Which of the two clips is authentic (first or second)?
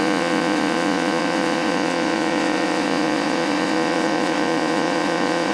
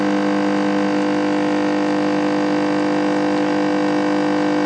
second